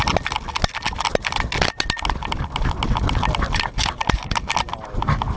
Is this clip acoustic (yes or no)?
yes